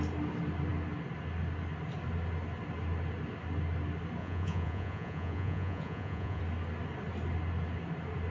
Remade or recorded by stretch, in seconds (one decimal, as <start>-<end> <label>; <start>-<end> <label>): 0.0-4.2 recorded; 4.2-6.4 remade; 6.4-8.3 recorded